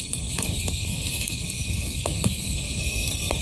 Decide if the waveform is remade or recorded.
remade